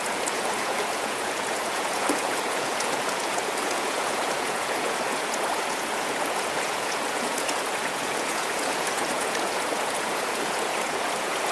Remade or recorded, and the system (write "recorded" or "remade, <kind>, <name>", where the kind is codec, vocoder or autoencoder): remade, vocoder, Vocos